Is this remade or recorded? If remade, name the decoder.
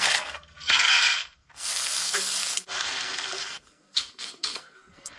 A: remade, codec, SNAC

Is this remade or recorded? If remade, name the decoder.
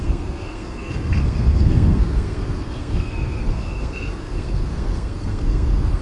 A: remade, codec, SNAC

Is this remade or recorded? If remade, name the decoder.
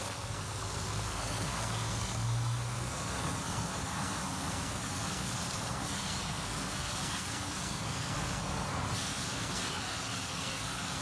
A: remade, codec, SNAC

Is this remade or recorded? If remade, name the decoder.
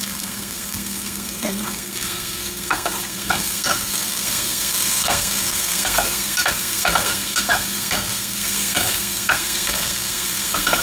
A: remade, codec, SNAC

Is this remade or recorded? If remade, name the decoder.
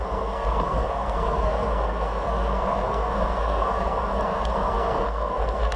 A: remade, codec, SNAC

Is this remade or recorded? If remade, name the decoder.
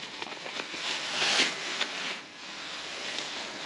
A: remade, codec, SNAC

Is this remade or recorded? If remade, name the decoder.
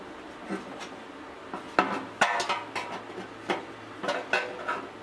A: recorded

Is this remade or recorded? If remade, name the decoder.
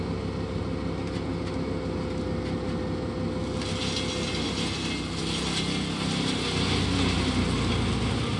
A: recorded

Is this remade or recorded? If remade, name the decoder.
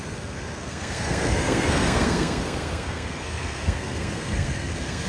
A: remade, codec, SNAC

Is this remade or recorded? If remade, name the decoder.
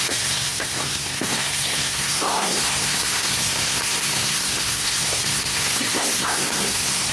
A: remade, codec, SNAC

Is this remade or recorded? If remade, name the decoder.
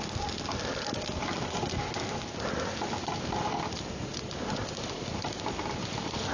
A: recorded